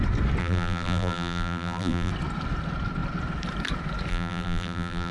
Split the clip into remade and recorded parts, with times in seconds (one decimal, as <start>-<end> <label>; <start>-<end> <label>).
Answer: 0.0-0.4 recorded; 0.4-2.1 remade; 2.1-4.1 recorded; 4.1-5.1 remade